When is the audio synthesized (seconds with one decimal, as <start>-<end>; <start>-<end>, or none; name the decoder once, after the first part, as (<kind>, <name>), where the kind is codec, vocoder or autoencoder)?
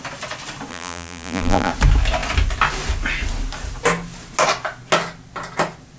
0.7-1.7 (vocoder, BigVGAN v2)